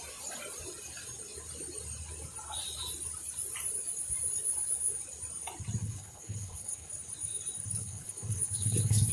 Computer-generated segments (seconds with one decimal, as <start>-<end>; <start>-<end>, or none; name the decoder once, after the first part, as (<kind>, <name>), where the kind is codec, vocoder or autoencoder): 5.8-6.9 (codec, HILCodec); 7.8-9.1